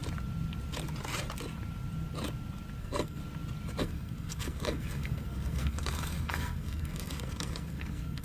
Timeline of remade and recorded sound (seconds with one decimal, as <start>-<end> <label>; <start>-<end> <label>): 0.0-2.8 recorded; 2.8-3.2 remade; 3.2-3.8 recorded; 3.8-8.2 remade